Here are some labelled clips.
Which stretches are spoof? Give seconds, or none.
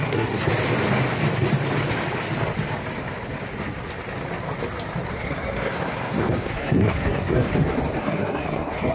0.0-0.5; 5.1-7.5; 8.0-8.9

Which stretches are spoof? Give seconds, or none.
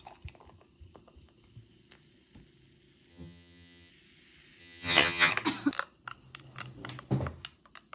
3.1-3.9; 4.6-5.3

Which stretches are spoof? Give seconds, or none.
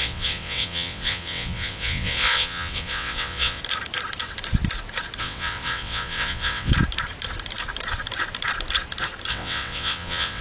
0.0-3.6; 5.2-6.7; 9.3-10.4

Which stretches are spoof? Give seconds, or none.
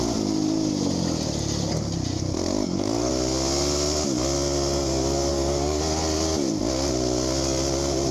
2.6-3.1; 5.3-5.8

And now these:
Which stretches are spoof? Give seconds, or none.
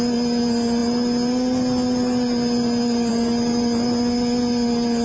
none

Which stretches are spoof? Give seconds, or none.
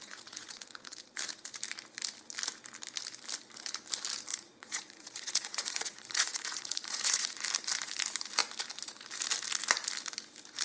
0.0-1.0; 4.3-7.4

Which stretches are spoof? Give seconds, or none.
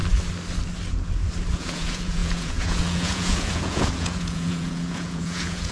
1.5-5.7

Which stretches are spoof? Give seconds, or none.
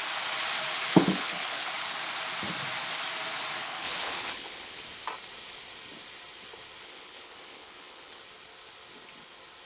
0.9-1.7; 3.6-4.8; 6.8-8.2